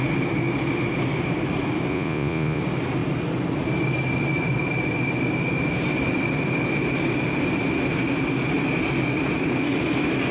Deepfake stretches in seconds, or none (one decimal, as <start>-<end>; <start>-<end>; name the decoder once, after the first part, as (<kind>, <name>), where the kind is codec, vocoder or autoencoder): 1.9-2.6 (vocoder, Vocos)